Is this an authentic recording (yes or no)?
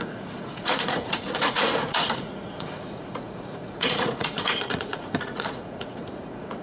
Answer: no